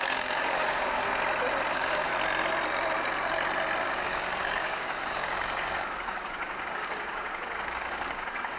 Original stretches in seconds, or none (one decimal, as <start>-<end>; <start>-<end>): 1.1-1.7; 2.1-3.8